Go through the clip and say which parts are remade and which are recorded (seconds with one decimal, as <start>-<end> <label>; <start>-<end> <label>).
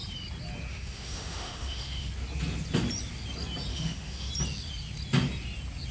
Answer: 0.0-0.7 recorded; 0.7-2.1 remade; 2.1-3.7 recorded; 3.7-4.3 remade; 4.3-5.9 recorded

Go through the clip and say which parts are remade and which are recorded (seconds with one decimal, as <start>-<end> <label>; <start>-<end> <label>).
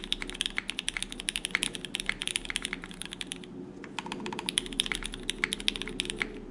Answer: 0.0-6.5 recorded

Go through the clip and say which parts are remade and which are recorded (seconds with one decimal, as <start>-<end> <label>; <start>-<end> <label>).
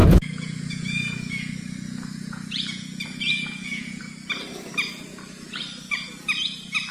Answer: 0.0-4.0 remade; 4.0-6.9 recorded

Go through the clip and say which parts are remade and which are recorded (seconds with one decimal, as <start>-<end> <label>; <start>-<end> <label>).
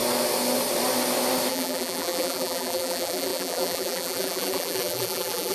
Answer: 0.0-1.5 recorded; 1.5-5.5 remade